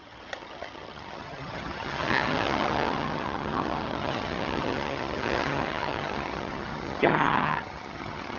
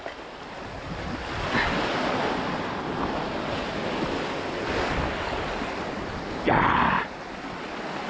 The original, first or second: second